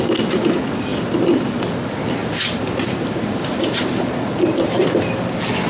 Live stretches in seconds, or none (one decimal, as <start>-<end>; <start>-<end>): 0.0-0.9; 1.7-2.2